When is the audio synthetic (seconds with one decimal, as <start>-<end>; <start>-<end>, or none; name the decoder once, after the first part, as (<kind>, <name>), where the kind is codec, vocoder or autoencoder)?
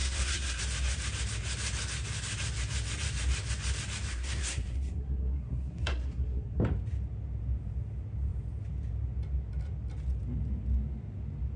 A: 0.0-0.6 (codec, SNAC); 4.1-6.6